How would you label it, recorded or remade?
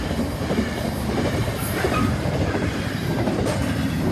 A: remade